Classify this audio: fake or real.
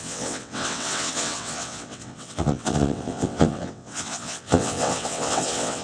fake